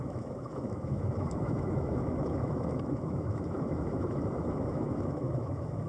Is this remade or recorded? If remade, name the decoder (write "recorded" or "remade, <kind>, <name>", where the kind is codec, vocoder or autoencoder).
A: remade, autoencoder, DAC-VAE